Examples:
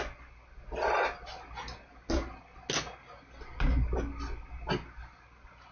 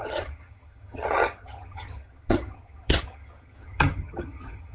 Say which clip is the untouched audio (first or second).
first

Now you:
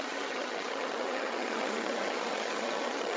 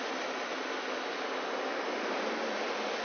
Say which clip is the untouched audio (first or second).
second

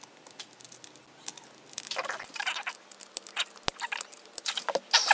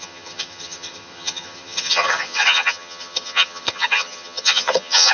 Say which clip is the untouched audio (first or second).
first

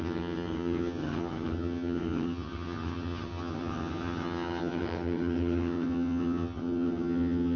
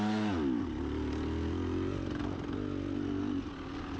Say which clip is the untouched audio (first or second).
second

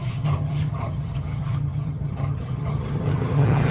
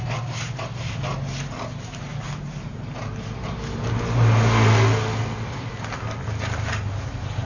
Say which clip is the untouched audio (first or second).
second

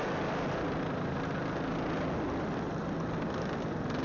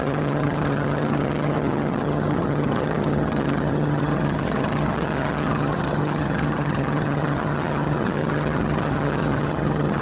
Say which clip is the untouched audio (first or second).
first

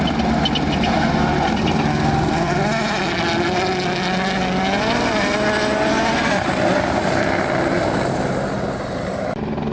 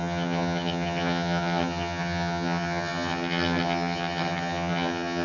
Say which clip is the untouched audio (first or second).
first